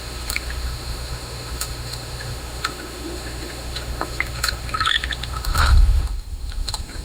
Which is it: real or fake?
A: fake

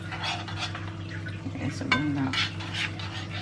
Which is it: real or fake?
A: real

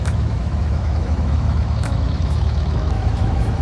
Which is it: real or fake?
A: fake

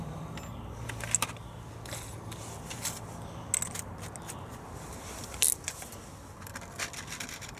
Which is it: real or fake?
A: real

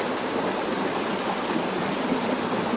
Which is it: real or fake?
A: real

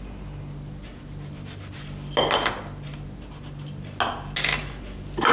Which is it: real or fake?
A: real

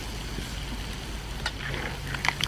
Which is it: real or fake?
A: real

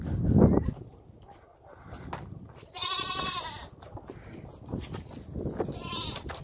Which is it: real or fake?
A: real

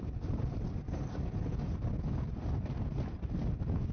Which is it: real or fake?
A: real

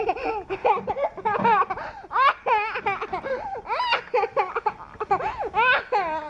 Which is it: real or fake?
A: real